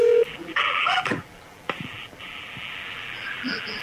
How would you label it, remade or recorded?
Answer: remade